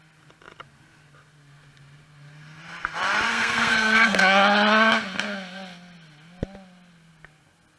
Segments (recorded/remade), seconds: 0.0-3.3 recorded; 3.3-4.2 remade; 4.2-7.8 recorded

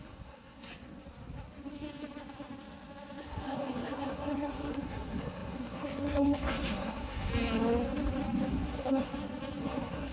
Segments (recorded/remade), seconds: 0.0-0.7 remade; 0.7-3.2 recorded; 3.2-7.3 remade; 7.3-8.5 recorded; 8.5-9.1 remade; 9.1-9.6 recorded; 9.6-10.1 remade

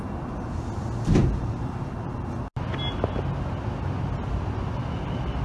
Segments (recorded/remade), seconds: 0.0-5.4 recorded

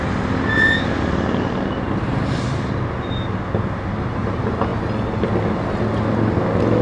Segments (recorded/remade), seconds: 0.0-6.8 recorded

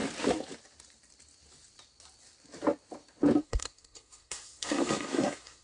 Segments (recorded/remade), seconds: 0.0-3.4 recorded; 3.4-5.6 remade